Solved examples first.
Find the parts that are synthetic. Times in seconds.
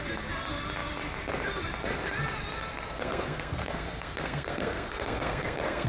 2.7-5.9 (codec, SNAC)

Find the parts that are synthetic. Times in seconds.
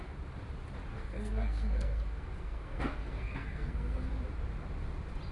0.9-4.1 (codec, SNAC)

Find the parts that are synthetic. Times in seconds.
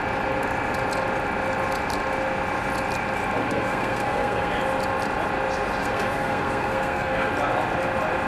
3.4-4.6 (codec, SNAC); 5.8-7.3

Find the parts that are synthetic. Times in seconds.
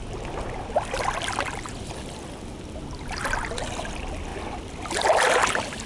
none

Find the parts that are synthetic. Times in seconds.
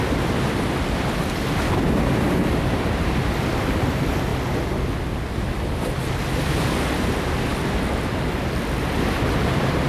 none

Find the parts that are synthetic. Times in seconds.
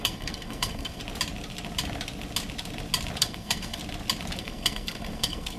0.0-1.0 (codec, SNAC); 3.2-3.8; 4.4-5.6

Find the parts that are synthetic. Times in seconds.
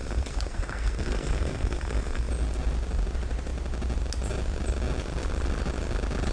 0.0-2.3 (codec, SNAC)